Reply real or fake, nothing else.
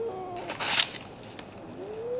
real